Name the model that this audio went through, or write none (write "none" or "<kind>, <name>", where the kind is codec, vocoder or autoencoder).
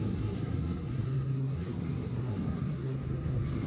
codec, SNAC